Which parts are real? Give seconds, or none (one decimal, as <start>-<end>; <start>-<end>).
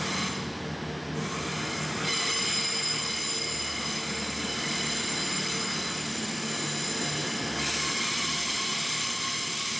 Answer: 0.0-1.0; 1.9-9.8